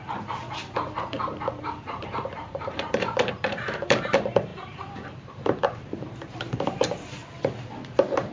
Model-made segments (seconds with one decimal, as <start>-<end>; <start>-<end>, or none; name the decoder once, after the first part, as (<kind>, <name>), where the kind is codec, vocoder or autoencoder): 0.0-7.2 (vocoder, BigVGAN v2)